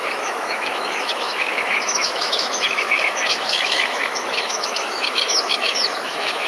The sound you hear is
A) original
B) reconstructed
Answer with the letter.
B